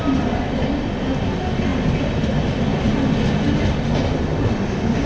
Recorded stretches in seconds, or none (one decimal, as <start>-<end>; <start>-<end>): 0.0-5.1